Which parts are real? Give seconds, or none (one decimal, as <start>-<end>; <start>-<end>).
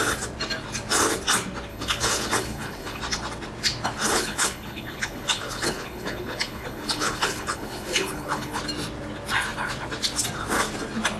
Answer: 0.0-1.7; 3.0-4.0; 8.6-11.2